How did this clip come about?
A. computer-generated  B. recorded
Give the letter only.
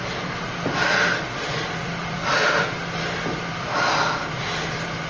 B